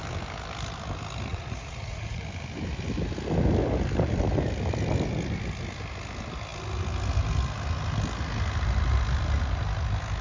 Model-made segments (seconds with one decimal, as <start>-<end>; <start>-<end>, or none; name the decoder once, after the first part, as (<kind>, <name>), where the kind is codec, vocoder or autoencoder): 1.3-2.2 (vocoder, Vocos)